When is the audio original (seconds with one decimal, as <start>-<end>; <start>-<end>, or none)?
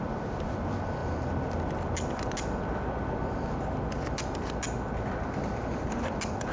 0.0-6.5